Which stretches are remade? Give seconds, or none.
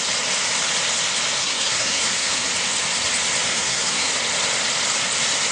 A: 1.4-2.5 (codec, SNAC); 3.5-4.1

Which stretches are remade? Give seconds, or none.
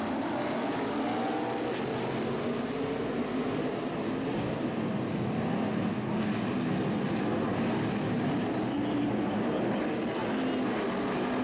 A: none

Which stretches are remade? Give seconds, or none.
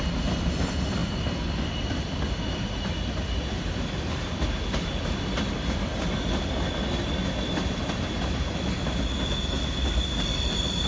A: none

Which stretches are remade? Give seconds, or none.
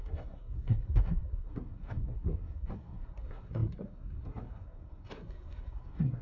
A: 0.0-6.2 (codec, SNAC)